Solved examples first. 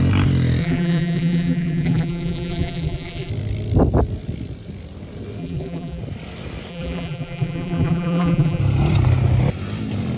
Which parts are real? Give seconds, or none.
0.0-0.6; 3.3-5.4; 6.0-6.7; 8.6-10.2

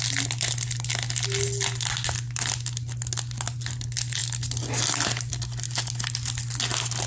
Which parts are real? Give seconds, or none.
0.0-7.1

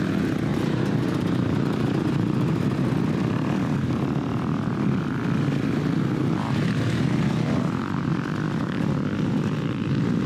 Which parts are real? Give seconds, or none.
0.0-0.5; 2.8-10.3

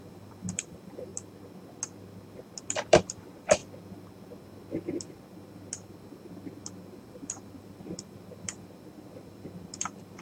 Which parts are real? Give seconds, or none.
1.1-2.6; 3.6-6.9